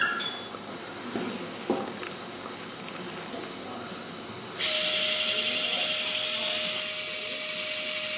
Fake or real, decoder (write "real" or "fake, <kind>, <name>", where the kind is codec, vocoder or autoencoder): real